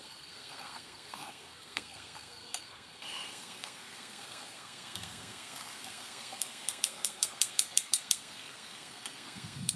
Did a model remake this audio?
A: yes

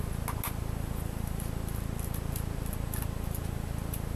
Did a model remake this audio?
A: no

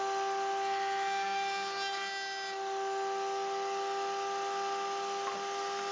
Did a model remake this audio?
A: no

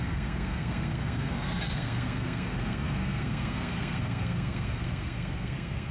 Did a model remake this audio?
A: yes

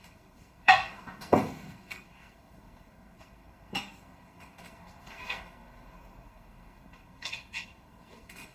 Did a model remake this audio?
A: yes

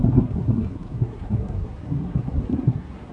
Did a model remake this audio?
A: yes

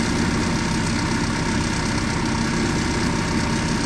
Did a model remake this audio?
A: no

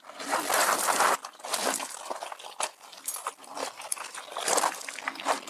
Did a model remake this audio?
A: no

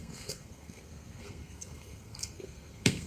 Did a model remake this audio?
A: yes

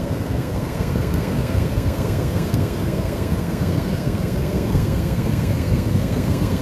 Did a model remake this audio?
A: yes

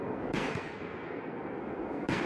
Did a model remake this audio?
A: yes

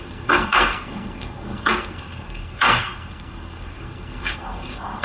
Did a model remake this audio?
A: yes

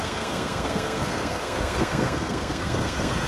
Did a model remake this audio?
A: yes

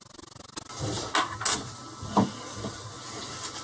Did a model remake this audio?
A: no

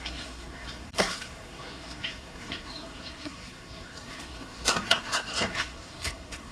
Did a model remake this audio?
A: yes